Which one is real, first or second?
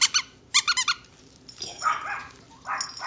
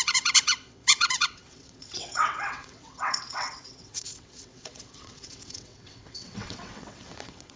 first